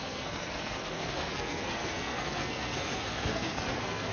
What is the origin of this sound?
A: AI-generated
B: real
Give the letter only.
A